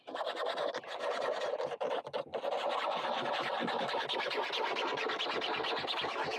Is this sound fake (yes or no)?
no